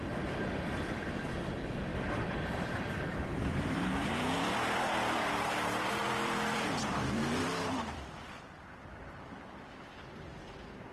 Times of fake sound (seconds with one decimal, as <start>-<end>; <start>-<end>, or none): 1.9-5.3; 6.0-9.4